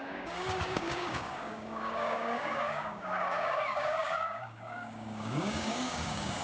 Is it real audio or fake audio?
fake